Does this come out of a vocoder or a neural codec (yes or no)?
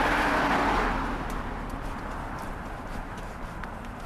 no